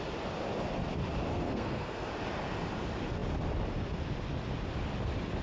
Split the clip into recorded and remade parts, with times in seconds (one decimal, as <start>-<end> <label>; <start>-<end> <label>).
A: 0.0-1.3 recorded; 1.3-2.1 remade; 2.1-5.4 recorded